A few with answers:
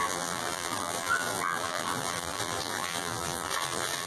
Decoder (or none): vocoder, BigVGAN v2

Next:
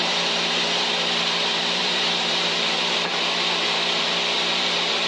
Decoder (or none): vocoder, BigVGAN v2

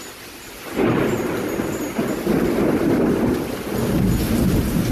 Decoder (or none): none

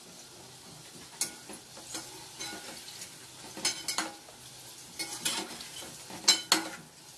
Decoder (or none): none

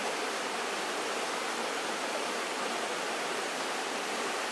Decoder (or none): none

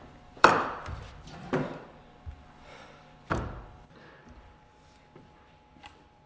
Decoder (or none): vocoder, BigVGAN v2